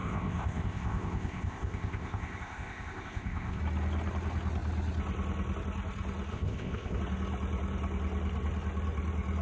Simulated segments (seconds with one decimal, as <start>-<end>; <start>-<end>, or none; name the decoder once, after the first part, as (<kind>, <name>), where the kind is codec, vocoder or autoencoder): 0.0-3.6 (codec, ZipCodec); 6.3-7.0